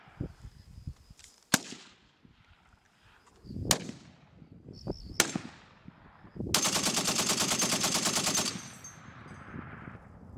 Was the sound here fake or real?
real